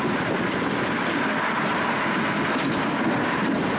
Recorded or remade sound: recorded